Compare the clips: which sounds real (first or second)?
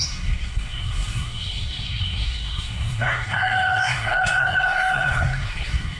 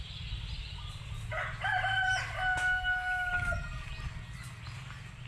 second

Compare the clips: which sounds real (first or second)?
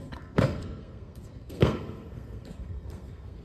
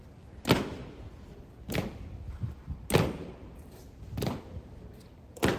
second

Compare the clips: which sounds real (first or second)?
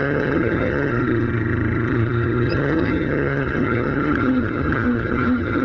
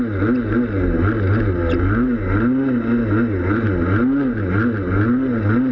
second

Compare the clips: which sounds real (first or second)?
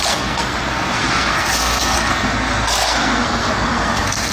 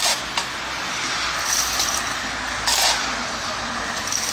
second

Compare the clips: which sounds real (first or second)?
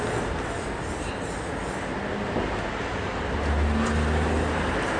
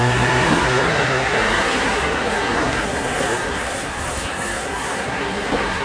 first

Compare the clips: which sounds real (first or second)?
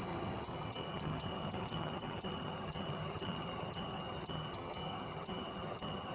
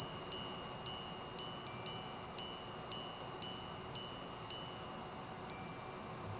second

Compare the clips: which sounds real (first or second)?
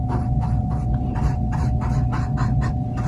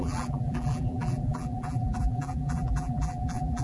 first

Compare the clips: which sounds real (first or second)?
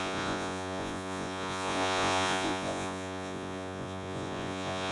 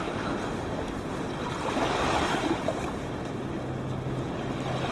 second